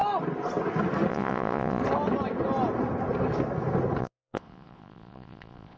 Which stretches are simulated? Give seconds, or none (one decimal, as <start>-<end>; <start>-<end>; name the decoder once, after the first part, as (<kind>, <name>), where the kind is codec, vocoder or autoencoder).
1.1-1.8 (vocoder, Vocos); 4.0-5.8